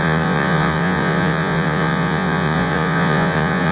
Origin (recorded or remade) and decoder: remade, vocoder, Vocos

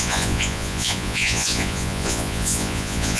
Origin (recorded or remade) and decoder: remade, vocoder, Vocos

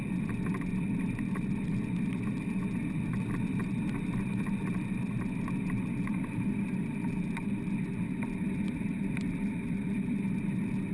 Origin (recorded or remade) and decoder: recorded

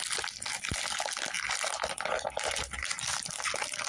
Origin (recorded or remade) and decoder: recorded